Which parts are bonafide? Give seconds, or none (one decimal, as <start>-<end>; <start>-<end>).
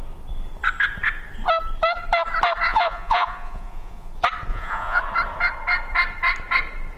0.0-2.7; 4.1-4.5; 5.0-7.0